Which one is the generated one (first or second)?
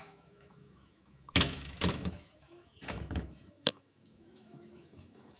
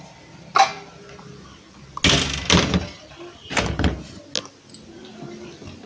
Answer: first